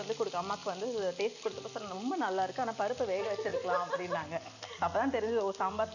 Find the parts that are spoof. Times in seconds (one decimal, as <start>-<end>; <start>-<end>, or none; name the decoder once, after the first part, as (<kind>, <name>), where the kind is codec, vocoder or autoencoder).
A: none